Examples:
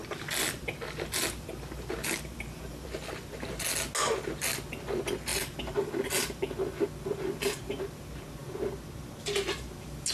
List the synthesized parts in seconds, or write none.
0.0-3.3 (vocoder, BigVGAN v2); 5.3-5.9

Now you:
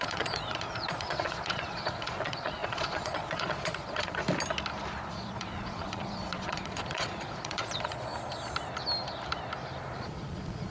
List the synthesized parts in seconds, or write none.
0.0-4.2 (vocoder, Vocos); 5.1-8.1; 9.8-10.7